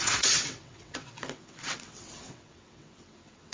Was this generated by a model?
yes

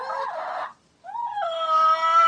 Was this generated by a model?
no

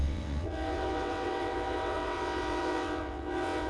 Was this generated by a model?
yes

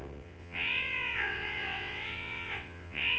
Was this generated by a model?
yes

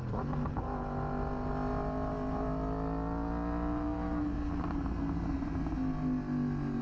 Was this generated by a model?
no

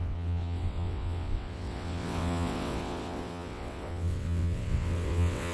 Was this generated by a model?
yes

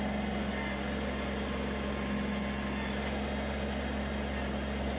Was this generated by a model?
no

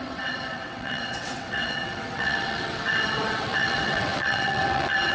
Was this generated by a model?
yes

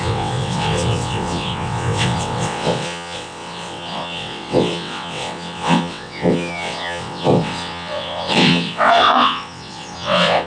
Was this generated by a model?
yes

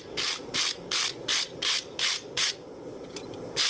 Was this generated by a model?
no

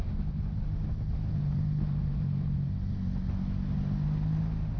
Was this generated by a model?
no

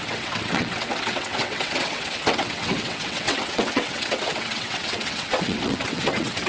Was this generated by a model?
yes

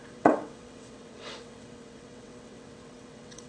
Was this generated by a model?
yes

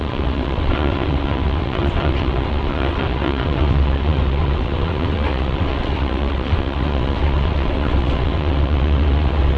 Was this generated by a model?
yes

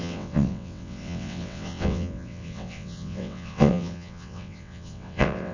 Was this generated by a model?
yes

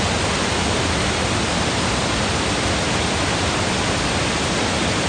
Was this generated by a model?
no